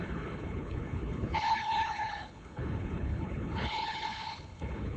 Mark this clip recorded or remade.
remade